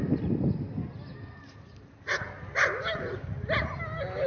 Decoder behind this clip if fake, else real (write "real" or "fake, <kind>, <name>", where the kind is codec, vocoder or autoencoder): real